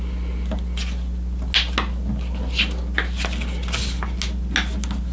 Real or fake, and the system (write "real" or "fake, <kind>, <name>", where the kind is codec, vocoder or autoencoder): real